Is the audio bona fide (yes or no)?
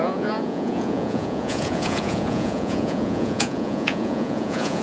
no